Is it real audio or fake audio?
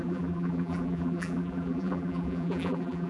fake